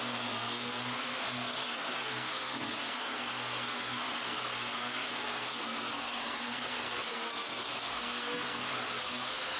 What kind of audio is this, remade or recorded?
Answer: remade